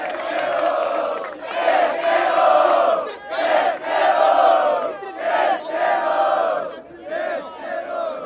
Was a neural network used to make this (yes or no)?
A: no